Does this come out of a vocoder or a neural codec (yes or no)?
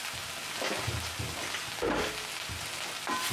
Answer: no